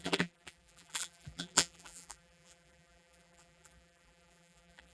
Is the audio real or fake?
fake